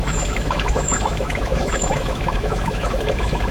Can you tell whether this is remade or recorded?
remade